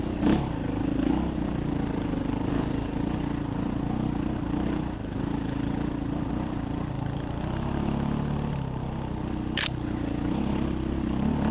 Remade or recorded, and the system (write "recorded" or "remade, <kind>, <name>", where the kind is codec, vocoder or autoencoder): recorded